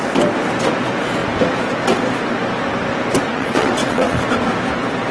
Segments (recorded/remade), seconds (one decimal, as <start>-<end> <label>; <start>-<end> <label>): 0.0-3.3 recorded; 3.3-4.2 remade; 4.2-5.1 recorded